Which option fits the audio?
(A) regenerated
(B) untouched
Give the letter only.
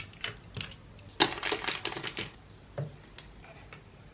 B